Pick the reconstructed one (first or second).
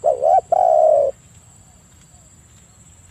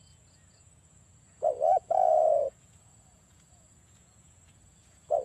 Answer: second